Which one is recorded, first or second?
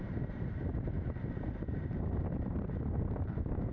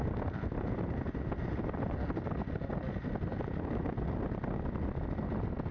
second